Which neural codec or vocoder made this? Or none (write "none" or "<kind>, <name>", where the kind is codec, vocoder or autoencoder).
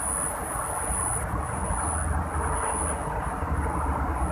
none